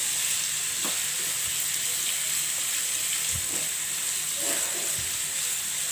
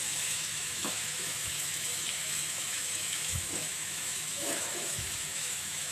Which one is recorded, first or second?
first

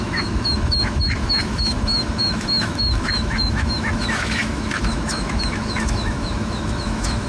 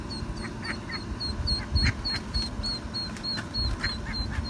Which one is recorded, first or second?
second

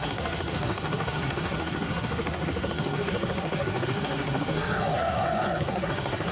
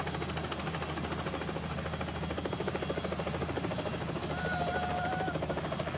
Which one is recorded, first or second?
second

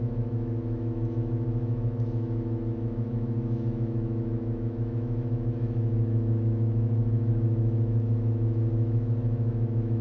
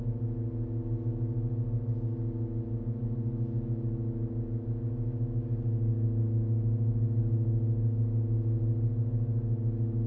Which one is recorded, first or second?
second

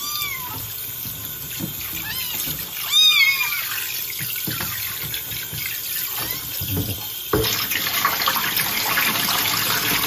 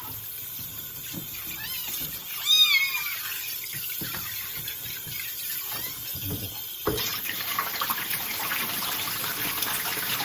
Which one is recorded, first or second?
first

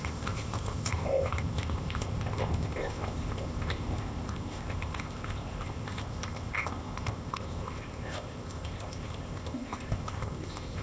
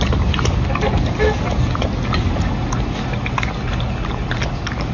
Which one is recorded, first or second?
second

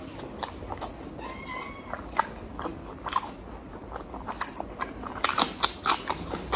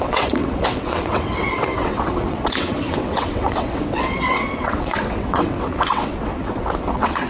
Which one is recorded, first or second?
first